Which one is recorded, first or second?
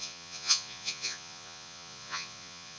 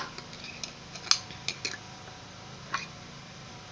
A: second